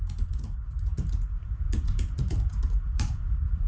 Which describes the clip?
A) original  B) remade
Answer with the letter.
B